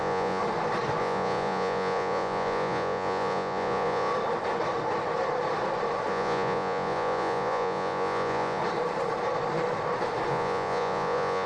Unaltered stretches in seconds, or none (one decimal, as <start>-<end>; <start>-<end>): 0.4-1.0; 4.1-6.1; 8.6-10.3